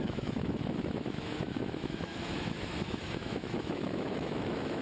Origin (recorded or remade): remade